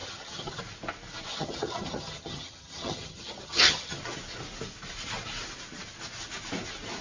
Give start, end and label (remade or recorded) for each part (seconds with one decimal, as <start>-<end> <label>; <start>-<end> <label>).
0.0-0.6 remade; 0.6-1.3 recorded; 1.3-4.0 remade; 4.0-7.0 recorded